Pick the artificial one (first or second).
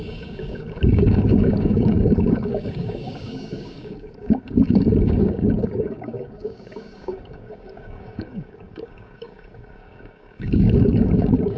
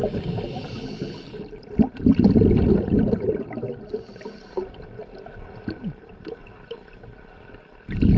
first